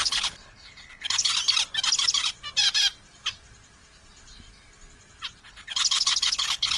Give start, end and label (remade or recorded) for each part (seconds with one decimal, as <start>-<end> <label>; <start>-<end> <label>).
0.0-1.3 remade; 1.3-5.4 recorded; 5.4-6.8 remade